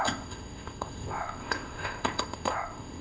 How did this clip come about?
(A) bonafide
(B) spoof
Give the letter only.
B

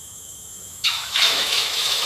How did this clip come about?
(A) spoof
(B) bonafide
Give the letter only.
A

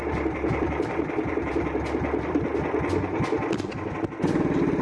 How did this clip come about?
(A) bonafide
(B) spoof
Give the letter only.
B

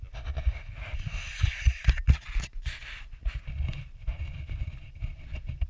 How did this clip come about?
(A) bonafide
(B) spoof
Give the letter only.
A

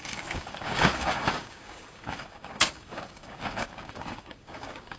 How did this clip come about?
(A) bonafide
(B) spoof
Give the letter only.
B